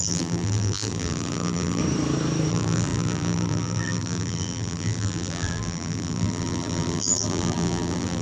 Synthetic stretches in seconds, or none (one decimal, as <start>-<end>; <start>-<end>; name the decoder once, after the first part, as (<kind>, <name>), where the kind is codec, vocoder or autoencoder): 0.0-1.8 (vocoder, BigVGAN v2); 2.5-8.2